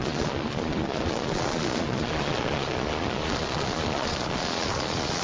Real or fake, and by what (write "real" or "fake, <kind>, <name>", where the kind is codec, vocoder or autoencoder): fake, vocoder, Vocos